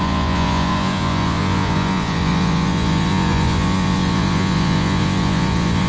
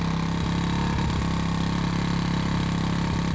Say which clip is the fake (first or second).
first